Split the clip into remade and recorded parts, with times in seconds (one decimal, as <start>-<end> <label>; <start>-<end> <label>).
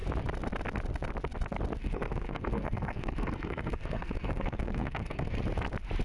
0.0-1.8 recorded; 1.8-5.4 remade; 5.4-6.0 recorded